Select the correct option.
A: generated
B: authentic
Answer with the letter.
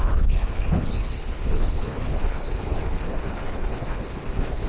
A